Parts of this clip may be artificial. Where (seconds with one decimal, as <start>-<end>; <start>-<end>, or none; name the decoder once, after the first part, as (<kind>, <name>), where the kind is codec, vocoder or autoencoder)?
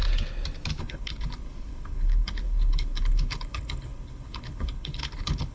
0.8-5.5 (codec, HILCodec)